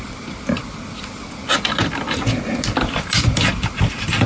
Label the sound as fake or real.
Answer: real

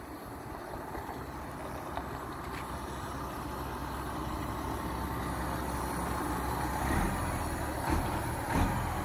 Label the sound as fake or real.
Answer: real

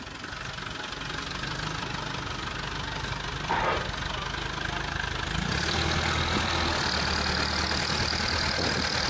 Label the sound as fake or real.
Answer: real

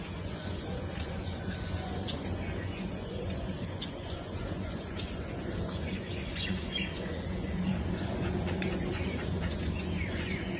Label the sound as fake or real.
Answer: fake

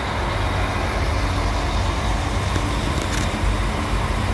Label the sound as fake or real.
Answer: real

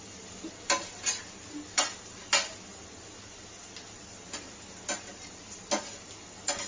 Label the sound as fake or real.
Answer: real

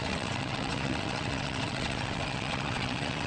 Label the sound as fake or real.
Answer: fake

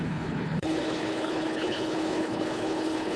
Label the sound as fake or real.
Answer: fake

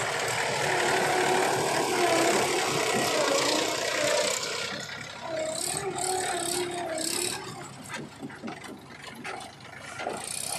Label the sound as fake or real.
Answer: real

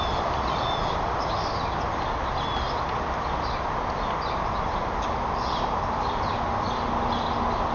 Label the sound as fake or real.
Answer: real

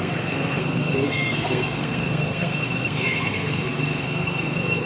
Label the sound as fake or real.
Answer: fake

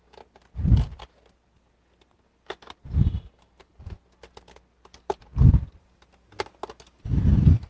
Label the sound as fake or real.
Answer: real